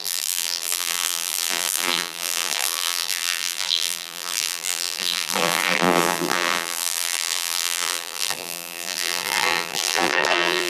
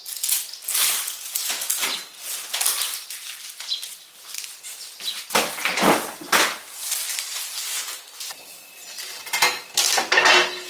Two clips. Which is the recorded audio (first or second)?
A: second